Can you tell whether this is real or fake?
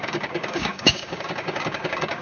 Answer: fake